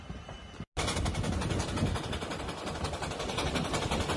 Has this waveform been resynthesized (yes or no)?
no